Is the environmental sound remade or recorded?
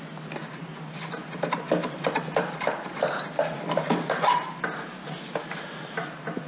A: recorded